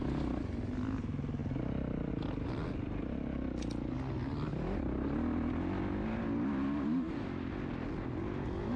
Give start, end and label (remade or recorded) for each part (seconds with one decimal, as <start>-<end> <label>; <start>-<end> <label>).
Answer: 0.0-8.8 recorded